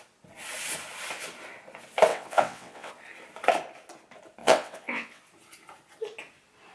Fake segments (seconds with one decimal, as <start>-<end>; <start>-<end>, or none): 2.1-2.9; 4.4-5.2